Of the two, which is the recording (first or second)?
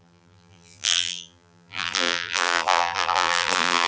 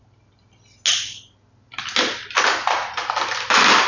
second